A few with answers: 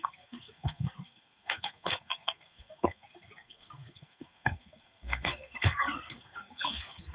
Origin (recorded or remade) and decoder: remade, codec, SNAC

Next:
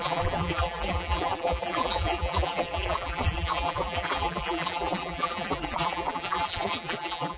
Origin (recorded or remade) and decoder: remade, vocoder, BigVGAN v2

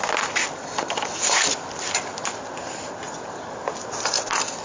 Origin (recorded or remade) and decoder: recorded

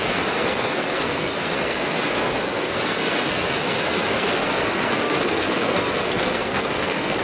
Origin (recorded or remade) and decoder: remade, codec, SNAC